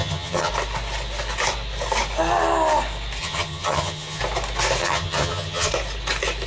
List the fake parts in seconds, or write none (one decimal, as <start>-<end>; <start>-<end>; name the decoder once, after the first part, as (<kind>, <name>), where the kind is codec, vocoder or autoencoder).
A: 0.0-0.5 (vocoder, HiFi-GAN); 3.2-4.2; 4.8-5.7